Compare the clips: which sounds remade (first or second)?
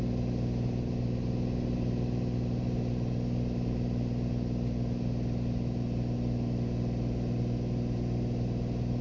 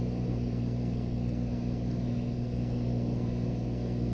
second